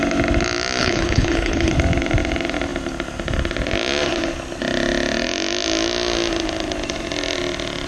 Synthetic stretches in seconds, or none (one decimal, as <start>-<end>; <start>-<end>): 0.8-1.7